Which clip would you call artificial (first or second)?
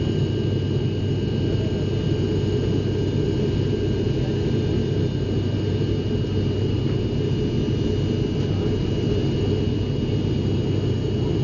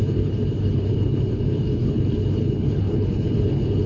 second